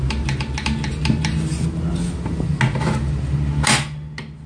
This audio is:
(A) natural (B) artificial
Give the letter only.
A